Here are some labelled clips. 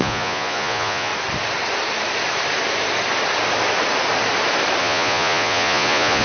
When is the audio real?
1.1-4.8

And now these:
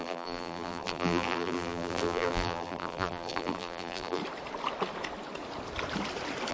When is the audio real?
4.2-6.5

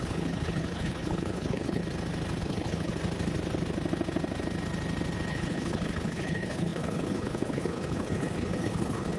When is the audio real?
1.8-2.4; 2.9-5.3

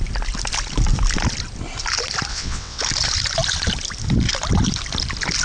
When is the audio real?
0.0-2.3; 2.8-5.4

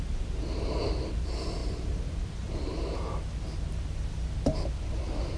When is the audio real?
0.0-5.4

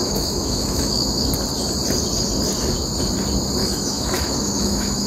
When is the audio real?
1.3-3.6

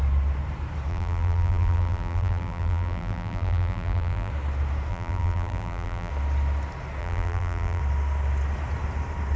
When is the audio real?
0.0-0.9; 4.3-4.9; 6.1-7.0; 7.8-9.4